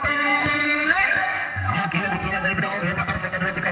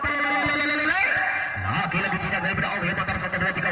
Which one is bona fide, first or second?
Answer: second